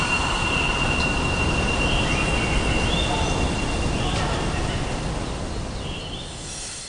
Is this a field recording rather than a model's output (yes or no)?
yes